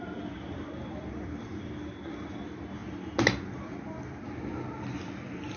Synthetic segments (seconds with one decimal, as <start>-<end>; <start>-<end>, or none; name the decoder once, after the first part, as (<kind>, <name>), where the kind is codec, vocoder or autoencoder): none